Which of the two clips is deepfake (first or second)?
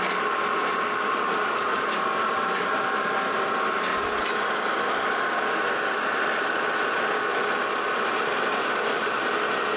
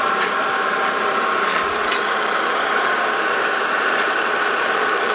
second